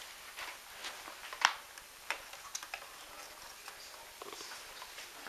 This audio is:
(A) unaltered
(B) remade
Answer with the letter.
A